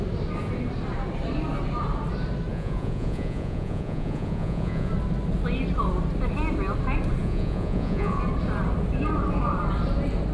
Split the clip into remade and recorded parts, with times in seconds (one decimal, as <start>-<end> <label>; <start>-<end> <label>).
0.0-2.5 recorded; 2.5-4.9 remade; 4.9-7.2 recorded; 7.2-8.2 remade; 8.2-10.3 recorded